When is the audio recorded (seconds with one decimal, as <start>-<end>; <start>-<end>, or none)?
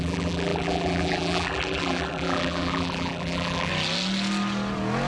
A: 3.7-5.1